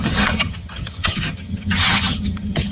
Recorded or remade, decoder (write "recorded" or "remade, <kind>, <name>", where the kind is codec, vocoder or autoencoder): remade, vocoder, HiFi-GAN